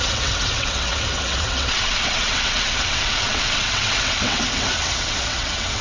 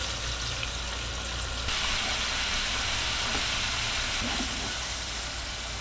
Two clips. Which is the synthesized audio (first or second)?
first